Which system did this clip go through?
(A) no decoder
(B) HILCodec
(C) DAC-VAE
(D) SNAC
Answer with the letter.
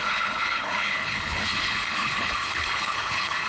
B